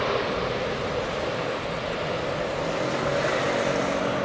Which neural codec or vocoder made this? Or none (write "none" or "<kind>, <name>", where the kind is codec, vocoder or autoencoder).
none